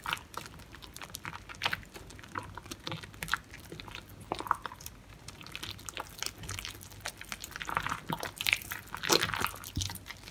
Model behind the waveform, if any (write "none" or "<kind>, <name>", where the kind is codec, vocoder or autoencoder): none